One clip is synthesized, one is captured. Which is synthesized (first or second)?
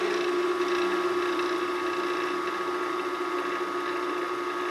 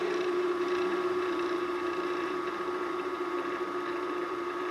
second